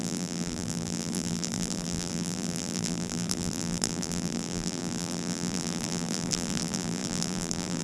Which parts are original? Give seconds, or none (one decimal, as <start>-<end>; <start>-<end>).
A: none